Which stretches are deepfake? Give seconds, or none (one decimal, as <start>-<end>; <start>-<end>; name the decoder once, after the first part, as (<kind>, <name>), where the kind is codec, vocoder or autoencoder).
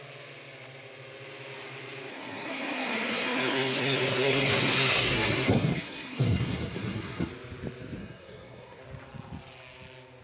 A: 2.1-7.3 (codec, SNAC); 8.0-8.8